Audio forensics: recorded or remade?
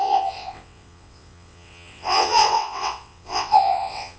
remade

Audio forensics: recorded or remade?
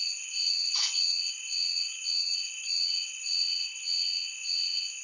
remade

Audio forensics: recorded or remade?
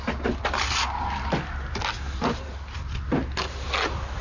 recorded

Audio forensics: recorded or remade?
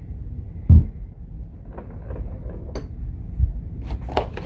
recorded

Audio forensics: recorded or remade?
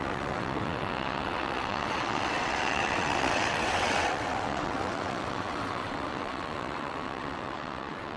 remade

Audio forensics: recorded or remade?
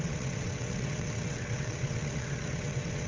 remade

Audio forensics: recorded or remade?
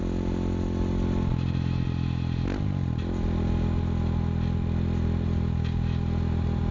recorded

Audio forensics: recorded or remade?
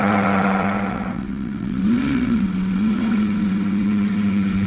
remade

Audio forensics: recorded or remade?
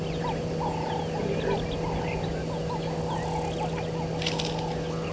recorded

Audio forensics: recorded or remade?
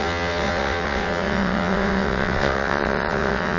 remade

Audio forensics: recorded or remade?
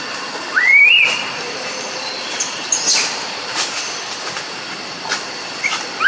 recorded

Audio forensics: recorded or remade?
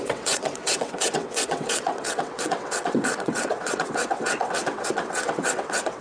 remade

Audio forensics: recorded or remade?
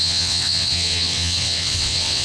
remade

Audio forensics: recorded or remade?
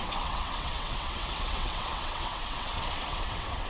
remade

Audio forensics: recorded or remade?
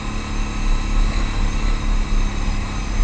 recorded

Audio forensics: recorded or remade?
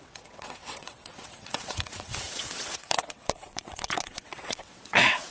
remade